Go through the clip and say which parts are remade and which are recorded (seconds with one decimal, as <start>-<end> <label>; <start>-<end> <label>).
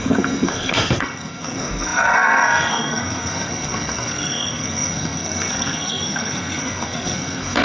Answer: 0.0-7.6 remade